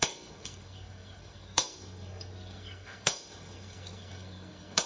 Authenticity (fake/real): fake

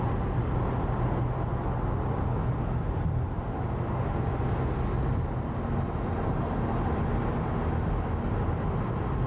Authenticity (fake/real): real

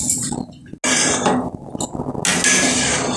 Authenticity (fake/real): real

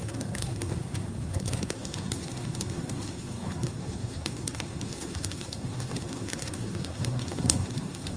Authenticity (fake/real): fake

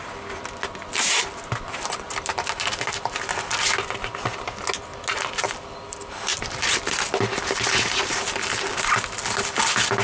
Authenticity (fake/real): real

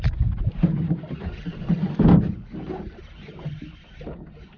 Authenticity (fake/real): real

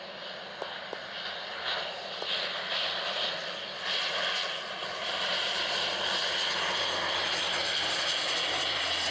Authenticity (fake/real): real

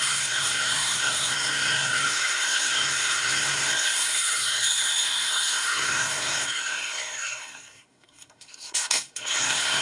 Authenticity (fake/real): fake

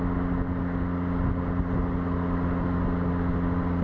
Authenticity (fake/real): real